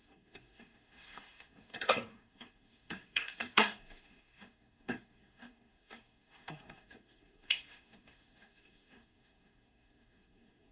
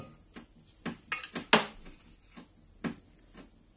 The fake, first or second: first